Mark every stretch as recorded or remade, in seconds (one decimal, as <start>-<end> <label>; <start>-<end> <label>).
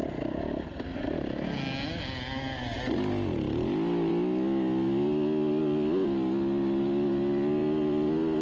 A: 0.0-8.4 recorded